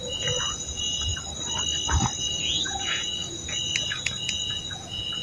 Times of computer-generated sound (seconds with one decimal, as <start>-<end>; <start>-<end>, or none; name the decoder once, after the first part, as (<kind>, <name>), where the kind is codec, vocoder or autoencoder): 0.0-1.1 (vocoder, Vocos); 2.2-5.2